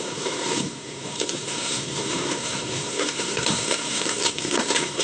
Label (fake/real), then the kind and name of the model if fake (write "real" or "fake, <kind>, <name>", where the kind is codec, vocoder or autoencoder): fake, codec, SNAC